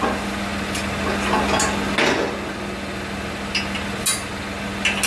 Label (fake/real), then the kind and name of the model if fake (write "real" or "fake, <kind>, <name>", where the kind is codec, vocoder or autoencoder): real